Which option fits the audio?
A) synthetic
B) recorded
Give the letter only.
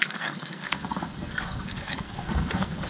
A